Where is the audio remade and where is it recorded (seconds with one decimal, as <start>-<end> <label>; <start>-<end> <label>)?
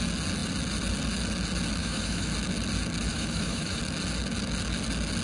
0.0-1.8 recorded; 1.8-2.3 remade; 2.3-3.1 recorded; 3.1-3.8 remade; 3.8-5.2 recorded